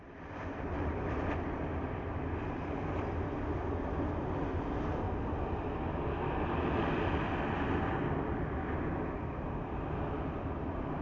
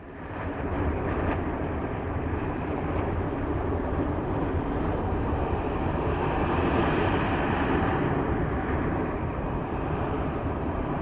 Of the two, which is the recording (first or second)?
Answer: first